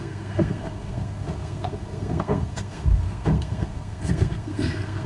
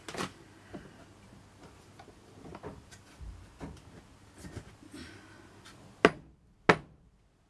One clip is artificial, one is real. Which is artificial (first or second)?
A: first